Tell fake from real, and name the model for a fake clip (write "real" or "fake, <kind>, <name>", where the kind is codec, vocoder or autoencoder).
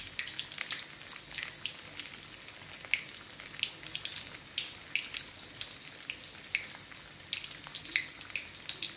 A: real